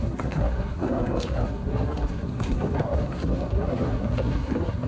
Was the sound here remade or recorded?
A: remade